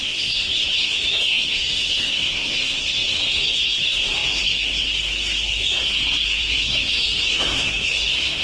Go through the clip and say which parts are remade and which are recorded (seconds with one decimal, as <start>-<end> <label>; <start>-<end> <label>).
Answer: 0.0-8.4 remade